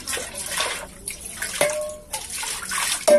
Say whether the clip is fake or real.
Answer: real